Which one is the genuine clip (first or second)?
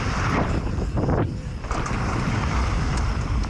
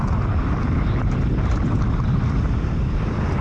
second